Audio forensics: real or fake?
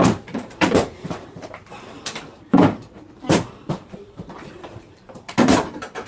fake